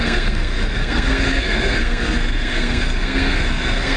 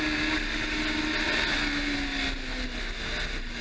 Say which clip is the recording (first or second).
second